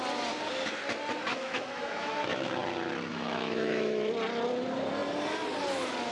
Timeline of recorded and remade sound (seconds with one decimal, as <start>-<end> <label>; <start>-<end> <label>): 0.0-1.3 recorded; 1.3-2.5 remade; 2.5-3.1 recorded; 3.1-4.1 remade; 4.1-6.1 recorded